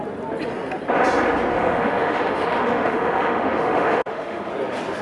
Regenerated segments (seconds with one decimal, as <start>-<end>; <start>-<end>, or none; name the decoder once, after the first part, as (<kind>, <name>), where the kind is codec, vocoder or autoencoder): 1.5-4.5 (autoencoder, DAC-VAE)